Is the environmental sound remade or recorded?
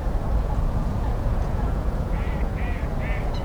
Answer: remade